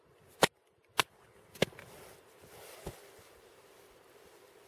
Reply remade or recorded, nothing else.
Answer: recorded